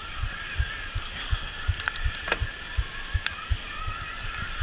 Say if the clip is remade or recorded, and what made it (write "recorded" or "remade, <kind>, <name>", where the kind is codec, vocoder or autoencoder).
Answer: recorded